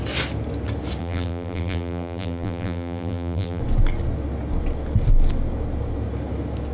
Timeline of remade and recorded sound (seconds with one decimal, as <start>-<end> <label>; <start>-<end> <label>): 0.0-1.0 recorded; 1.0-3.6 remade; 3.6-6.7 recorded